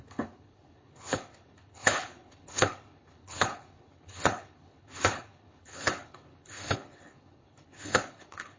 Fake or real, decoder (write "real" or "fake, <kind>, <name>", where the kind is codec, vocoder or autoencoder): fake, codec, HILCodec